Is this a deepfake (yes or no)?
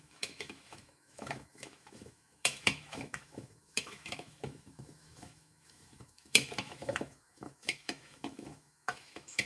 yes